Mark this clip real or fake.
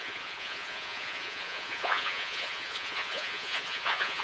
fake